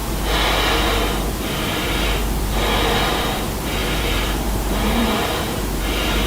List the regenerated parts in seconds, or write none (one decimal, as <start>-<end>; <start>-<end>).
3.8-5.8